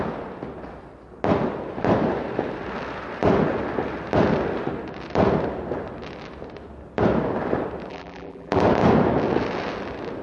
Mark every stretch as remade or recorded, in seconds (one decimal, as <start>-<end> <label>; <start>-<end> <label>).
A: 0.0-7.9 recorded; 7.9-8.6 remade; 8.6-10.2 recorded